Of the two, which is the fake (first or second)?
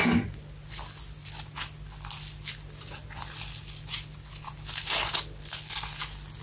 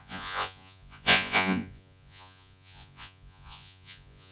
second